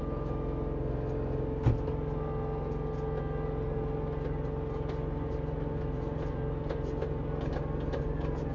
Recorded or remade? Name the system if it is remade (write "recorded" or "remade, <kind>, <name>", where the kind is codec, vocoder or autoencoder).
recorded